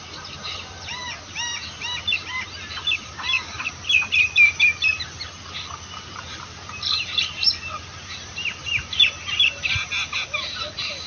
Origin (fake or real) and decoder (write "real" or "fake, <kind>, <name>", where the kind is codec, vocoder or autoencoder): fake, vocoder, BigVGAN v2